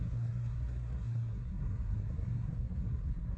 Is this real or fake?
fake